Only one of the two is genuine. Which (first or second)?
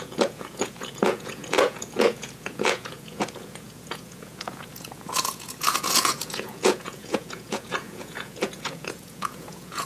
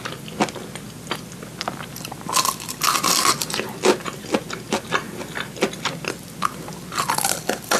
second